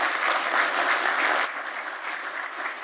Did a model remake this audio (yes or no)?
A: no